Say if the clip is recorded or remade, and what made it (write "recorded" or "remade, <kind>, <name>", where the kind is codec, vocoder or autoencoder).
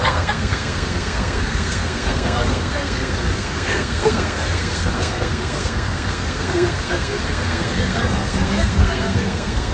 remade, codec, SNAC